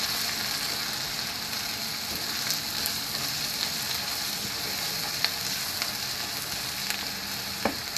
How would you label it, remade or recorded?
recorded